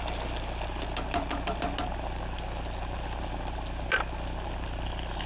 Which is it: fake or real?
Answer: real